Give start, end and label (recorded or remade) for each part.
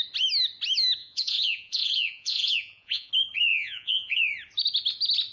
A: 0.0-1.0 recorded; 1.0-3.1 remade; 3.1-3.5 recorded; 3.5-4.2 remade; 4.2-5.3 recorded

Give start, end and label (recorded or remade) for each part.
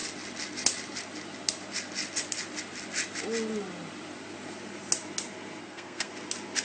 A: 0.0-5.6 recorded; 5.6-6.1 remade; 6.1-6.6 recorded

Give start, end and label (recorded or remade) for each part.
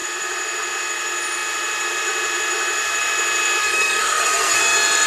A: 0.0-3.6 recorded; 3.6-4.6 remade; 4.6-5.1 recorded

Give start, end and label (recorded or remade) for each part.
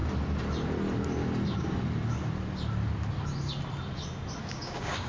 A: 0.0-4.4 recorded; 4.4-5.1 remade